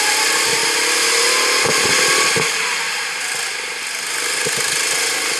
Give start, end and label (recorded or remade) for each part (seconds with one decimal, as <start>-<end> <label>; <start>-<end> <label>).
0.0-5.4 recorded